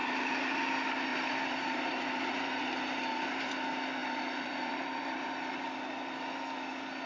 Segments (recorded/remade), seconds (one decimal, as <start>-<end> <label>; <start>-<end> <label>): 0.0-0.6 remade; 0.6-1.1 recorded; 1.1-3.5 remade; 3.5-4.0 recorded; 4.0-5.3 remade; 5.3-7.1 recorded